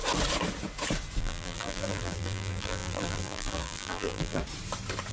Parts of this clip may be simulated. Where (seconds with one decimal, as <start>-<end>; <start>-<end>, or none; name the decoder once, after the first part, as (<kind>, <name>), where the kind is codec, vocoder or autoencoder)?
1.2-4.4 (vocoder, BigVGAN v2)